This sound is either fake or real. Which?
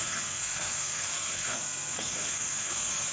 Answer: fake